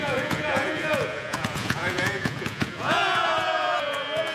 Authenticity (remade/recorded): remade